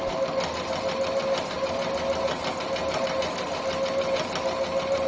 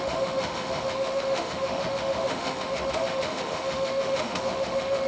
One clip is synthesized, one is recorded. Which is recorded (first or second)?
first